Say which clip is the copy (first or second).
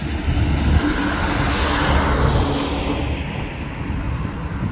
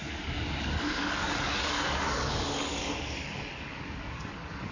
second